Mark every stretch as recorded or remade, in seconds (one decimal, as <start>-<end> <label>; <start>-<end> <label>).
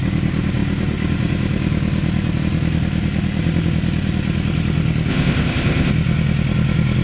0.0-5.1 recorded; 5.1-5.9 remade; 5.9-7.0 recorded